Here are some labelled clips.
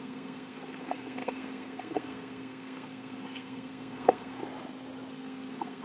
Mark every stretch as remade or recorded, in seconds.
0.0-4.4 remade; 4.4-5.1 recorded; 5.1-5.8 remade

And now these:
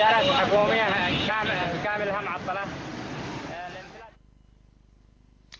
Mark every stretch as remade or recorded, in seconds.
0.0-5.6 recorded

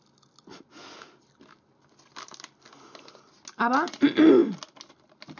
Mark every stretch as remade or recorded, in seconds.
0.0-5.4 recorded

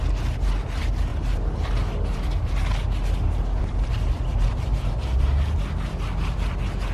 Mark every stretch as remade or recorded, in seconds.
0.0-1.1 recorded; 1.1-5.2 remade; 5.2-6.9 recorded

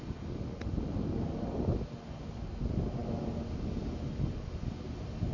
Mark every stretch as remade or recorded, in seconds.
0.0-5.3 recorded

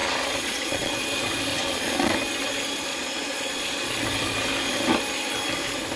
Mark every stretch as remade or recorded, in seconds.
0.0-0.9 remade; 0.9-1.5 recorded; 1.5-2.1 remade; 2.1-2.9 recorded; 2.9-4.0 remade; 4.0-6.0 recorded

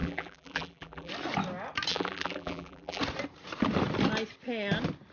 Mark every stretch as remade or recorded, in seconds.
0.0-1.1 remade; 1.1-1.9 recorded; 1.9-3.0 remade; 3.0-5.1 recorded

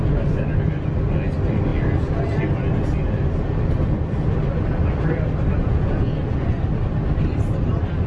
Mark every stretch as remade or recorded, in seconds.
0.0-5.6 recorded; 5.6-6.2 remade; 6.2-8.1 recorded